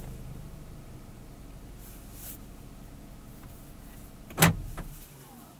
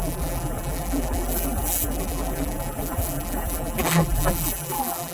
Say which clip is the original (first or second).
first